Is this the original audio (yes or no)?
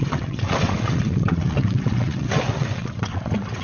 no